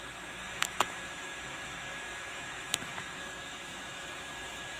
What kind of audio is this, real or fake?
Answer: fake